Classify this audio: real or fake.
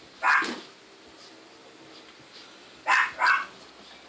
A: real